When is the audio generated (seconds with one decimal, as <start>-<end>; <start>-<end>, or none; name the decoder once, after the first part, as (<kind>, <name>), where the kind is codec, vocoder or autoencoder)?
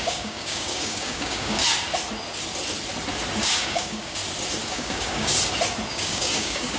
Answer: 0.0-1.6 (codec, DAC); 3.4-4.2; 4.7-5.3; 5.9-6.8